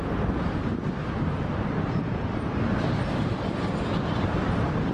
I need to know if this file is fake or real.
real